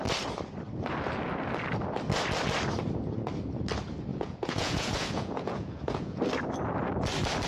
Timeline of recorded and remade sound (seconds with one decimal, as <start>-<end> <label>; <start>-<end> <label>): 0.0-4.1 recorded; 4.1-6.2 remade; 6.2-7.5 recorded